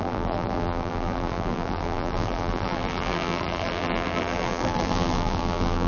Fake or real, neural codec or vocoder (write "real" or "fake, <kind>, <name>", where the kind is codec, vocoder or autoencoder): fake, vocoder, BigVGAN v2